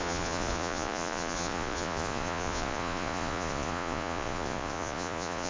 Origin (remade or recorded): remade